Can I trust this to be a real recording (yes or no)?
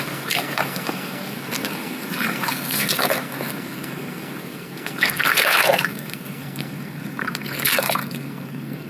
no